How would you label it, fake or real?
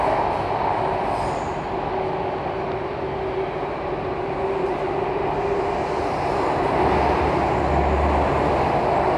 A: real